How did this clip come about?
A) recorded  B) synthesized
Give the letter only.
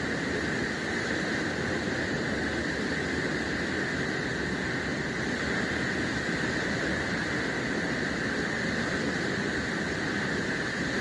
A